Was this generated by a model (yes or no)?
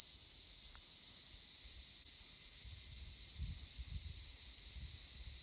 no